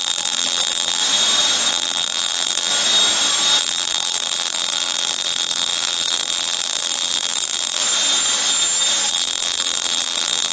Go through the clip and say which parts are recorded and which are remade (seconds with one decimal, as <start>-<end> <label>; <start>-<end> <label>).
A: 0.0-1.0 remade; 1.0-1.7 recorded; 1.7-2.7 remade; 2.7-3.6 recorded; 3.6-7.8 remade; 7.8-9.1 recorded; 9.1-10.5 remade